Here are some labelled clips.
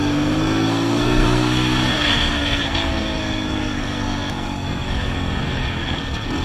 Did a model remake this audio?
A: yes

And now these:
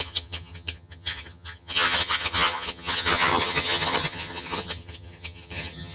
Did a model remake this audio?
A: yes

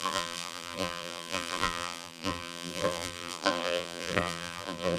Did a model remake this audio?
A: yes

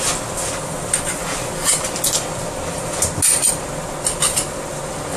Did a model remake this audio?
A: no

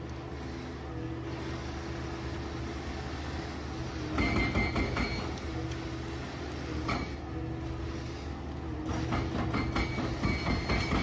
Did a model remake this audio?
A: no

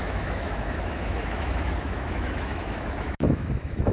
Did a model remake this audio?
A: yes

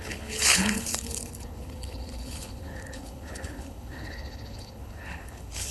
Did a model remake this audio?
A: yes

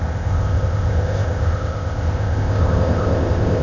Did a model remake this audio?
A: yes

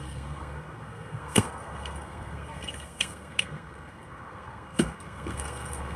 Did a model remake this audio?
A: yes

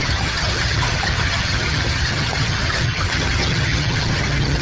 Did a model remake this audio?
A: yes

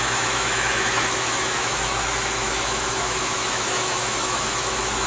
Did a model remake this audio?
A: yes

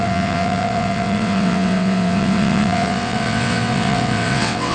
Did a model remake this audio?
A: yes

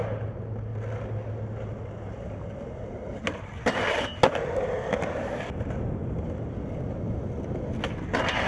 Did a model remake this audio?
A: no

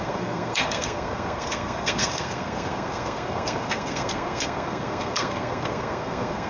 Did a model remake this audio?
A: yes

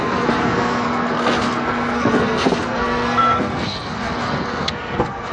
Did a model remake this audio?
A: yes